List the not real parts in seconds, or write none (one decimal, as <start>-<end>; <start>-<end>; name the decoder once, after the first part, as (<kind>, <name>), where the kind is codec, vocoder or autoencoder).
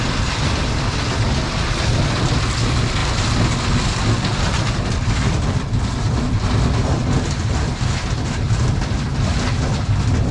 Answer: none